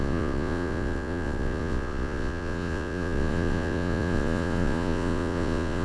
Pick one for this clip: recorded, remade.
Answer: remade